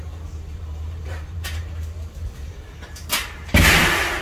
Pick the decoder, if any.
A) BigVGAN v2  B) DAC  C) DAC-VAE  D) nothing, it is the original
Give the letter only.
A